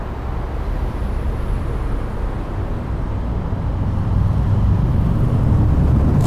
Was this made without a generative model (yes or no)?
yes